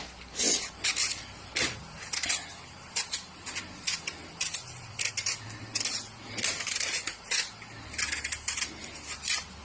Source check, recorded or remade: recorded